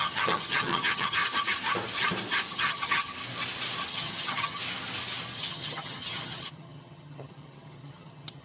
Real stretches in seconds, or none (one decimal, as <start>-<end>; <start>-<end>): 1.2-2.5; 3.1-3.9; 4.6-5.4

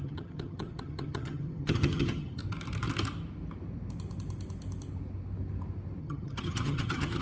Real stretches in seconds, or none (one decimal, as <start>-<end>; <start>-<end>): 2.4-6.0

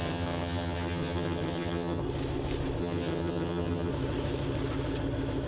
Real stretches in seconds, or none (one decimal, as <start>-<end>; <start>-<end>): 2.0-2.8; 3.9-5.5

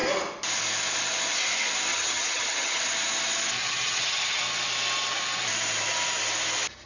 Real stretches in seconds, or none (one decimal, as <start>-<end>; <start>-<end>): 0.0-1.9; 2.8-3.6; 4.4-6.9